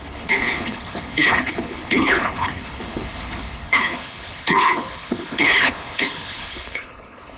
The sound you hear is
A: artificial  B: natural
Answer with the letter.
A